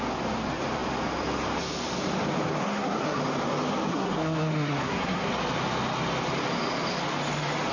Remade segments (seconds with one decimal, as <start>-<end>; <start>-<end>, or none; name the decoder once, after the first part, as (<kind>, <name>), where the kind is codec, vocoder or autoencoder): 2.6-3.2 (codec, SNAC); 3.9-5.3